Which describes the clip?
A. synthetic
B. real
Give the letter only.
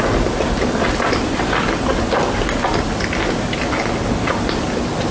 B